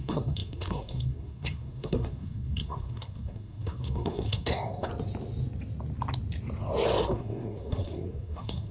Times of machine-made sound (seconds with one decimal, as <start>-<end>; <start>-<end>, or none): 0.0-4.9; 7.0-8.7